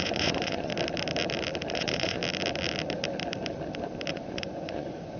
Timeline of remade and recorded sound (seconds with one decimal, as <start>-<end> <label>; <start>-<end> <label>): 0.0-0.7 remade; 0.7-1.7 recorded; 1.7-2.2 remade; 2.2-4.1 recorded; 4.1-5.2 remade